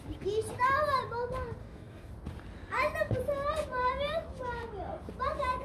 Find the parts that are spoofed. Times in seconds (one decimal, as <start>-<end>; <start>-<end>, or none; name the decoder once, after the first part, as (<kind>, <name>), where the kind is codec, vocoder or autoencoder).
1.6-2.1 (codec, DAC)